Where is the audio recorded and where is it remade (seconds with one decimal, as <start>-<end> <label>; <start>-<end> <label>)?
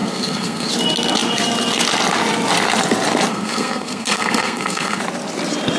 0.0-0.7 remade; 0.7-3.3 recorded; 3.3-5.0 remade; 5.0-5.8 recorded